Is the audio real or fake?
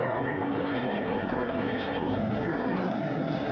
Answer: fake